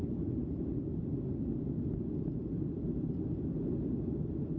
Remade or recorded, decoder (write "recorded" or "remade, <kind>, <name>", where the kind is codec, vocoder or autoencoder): recorded